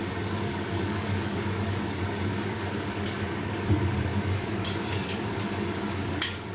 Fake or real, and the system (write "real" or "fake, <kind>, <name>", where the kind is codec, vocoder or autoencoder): fake, codec, DAC